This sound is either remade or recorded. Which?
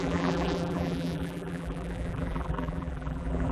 remade